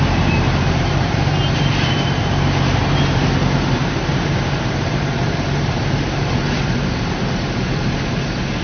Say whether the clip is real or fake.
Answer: fake